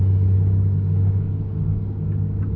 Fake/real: fake